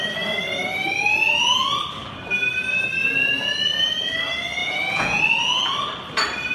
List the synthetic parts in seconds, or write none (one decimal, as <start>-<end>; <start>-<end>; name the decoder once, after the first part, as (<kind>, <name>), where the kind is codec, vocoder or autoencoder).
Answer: 3.0-3.5 (vocoder, Vocos); 4.6-5.2